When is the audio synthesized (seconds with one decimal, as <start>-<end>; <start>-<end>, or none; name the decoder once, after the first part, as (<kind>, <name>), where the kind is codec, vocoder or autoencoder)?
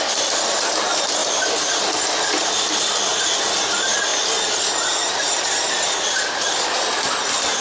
1.2-1.8 (vocoder, BigVGAN v2)